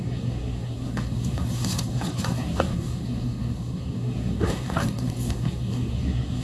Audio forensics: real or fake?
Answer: fake